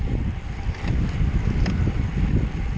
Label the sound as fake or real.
real